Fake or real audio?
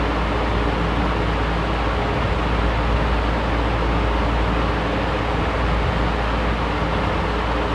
real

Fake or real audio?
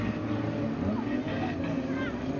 real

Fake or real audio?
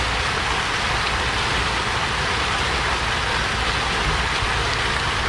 real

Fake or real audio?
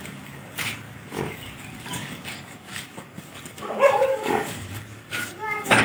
fake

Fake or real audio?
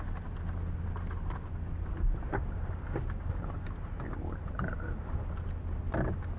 real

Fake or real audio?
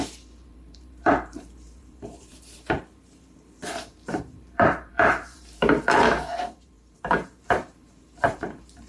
fake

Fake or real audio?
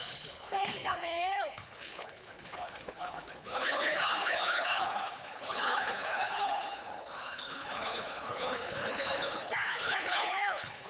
fake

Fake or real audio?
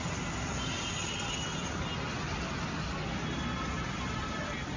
real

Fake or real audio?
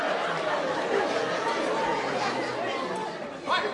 real